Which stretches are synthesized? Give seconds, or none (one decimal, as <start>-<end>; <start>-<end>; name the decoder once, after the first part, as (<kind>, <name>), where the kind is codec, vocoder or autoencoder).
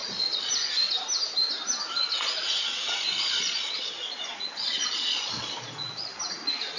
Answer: 0.0-0.7 (vocoder, Vocos); 2.1-6.2